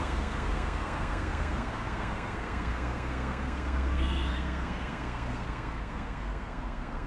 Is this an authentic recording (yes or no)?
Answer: no